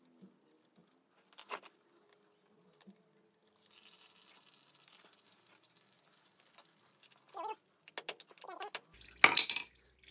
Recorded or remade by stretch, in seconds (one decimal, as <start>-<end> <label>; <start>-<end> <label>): 0.0-10.1 recorded